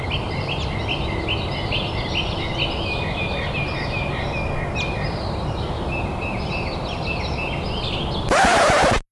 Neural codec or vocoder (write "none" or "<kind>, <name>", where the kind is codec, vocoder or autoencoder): none